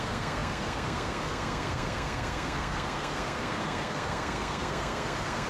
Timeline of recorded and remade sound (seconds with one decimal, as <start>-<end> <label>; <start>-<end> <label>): 0.0-5.5 remade